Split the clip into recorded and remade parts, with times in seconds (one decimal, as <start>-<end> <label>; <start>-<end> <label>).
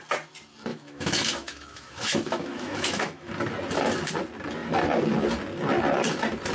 0.0-0.7 recorded; 0.7-3.3 remade; 3.3-6.5 recorded